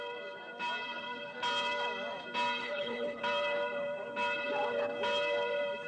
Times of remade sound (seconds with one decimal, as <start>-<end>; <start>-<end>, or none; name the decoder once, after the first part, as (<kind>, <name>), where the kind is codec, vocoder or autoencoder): 2.6-3.2 (codec, HILCodec)